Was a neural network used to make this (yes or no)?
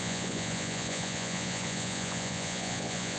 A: yes